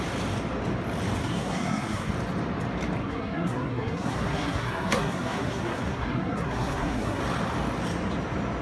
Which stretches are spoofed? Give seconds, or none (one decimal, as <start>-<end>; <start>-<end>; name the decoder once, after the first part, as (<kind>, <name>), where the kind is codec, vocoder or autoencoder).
1.2-2.1 (codec, SNAC); 3.0-7.2